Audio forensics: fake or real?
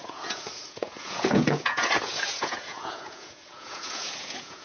fake